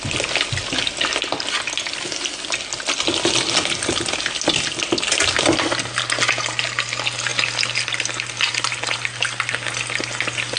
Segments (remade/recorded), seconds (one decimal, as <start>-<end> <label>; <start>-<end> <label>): 0.0-10.6 recorded